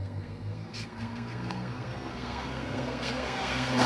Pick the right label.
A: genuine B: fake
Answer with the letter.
B